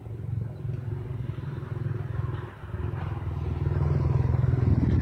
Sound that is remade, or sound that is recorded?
recorded